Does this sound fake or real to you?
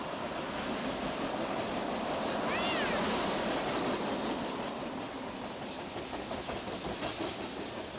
real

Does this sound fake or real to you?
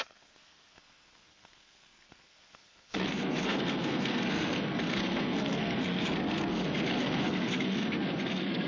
fake